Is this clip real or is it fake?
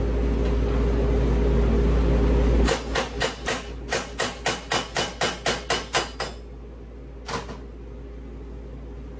real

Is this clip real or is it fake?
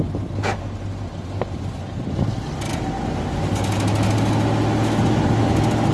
real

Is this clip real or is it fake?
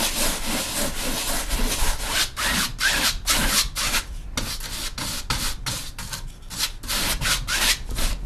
real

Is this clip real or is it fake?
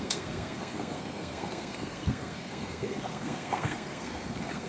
fake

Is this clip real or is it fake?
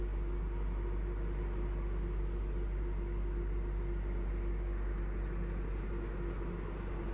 real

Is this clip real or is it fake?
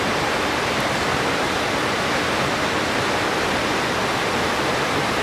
real